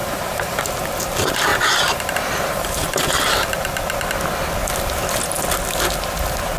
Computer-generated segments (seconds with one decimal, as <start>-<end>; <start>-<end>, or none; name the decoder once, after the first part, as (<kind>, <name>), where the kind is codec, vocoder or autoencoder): 0.0-0.6 (vocoder, BigVGAN v2); 1.5-3.7